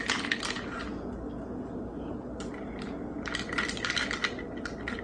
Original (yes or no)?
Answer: yes